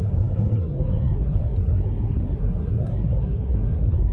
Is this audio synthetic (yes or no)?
yes